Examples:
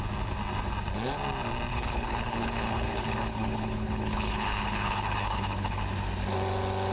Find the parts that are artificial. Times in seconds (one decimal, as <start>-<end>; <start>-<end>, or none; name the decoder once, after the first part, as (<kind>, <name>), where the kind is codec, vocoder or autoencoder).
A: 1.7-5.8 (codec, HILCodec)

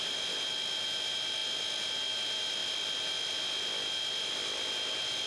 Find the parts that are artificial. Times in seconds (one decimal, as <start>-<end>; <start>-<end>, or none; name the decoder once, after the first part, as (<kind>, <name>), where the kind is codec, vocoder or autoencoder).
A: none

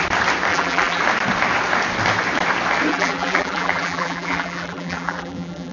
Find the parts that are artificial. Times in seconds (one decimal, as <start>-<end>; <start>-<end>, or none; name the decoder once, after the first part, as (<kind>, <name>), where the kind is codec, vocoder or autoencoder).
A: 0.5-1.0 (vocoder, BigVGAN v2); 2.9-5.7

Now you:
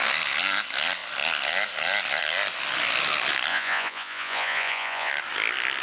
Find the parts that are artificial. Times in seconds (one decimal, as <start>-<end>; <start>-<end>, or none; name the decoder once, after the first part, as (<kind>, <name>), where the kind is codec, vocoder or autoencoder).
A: 3.5-5.1 (vocoder, Vocos)

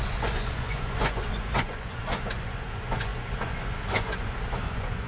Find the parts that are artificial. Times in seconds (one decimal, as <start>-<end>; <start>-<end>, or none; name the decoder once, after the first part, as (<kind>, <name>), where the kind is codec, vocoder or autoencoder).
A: 0.0-5.1 (vocoder, Vocos)

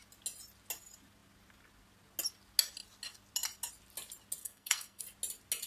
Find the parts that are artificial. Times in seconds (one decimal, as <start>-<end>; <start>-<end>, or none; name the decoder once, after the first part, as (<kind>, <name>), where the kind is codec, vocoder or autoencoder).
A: 4.4-5.0 (codec, SNAC)